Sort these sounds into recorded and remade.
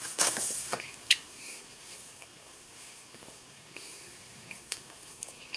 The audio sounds remade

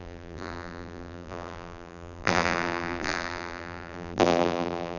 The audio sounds remade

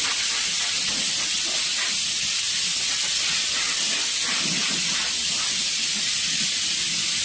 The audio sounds recorded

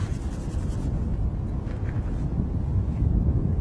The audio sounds recorded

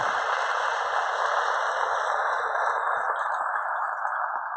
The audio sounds recorded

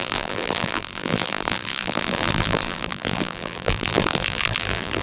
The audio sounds remade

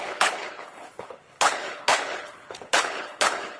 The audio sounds remade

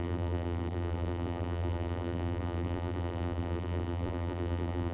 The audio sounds remade